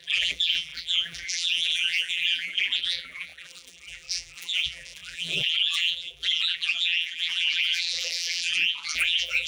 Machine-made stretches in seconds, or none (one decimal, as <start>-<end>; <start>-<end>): 0.0-9.5